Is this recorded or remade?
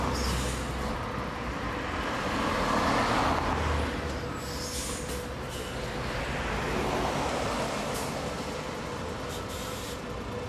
recorded